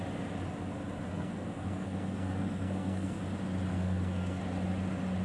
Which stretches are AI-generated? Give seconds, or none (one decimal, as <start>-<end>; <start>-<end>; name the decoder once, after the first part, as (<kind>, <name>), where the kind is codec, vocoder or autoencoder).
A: 1.1-3.2 (codec, SNAC); 3.7-4.4